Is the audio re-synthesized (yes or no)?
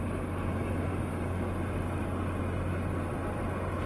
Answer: no